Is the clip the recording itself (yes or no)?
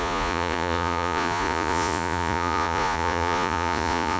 no